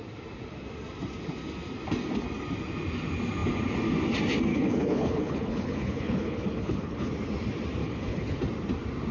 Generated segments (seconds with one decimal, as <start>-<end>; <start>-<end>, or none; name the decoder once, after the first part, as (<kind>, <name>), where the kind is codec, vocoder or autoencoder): 4.5-7.1 (codec, HILCodec); 7.8-8.4